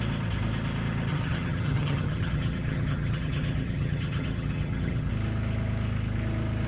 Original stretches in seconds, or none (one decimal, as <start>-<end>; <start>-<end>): 0.0-1.1; 5.1-6.7